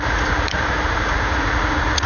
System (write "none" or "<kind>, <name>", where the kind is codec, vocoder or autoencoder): vocoder, Vocos